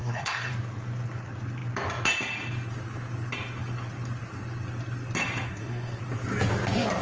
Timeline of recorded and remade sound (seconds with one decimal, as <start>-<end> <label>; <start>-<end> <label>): 0.0-0.5 remade; 0.5-5.5 recorded; 5.5-6.0 remade; 6.0-7.0 recorded